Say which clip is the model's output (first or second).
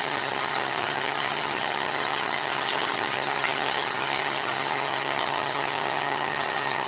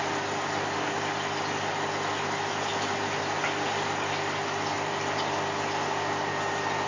first